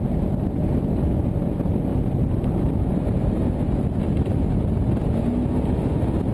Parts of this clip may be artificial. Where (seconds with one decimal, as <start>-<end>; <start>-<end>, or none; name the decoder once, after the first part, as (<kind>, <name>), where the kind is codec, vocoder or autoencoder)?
none